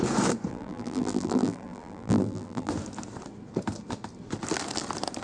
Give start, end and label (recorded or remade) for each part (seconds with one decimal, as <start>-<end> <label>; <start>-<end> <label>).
0.0-0.5 recorded; 0.5-2.7 remade; 2.7-5.2 recorded